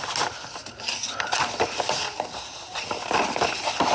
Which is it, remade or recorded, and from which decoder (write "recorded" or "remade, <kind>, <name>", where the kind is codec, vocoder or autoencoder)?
recorded